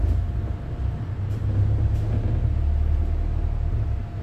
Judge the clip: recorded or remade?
recorded